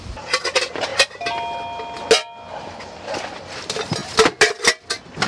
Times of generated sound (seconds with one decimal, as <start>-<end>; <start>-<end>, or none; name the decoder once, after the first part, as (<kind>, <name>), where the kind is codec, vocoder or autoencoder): none